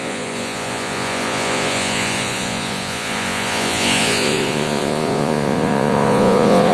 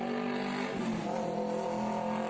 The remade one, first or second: first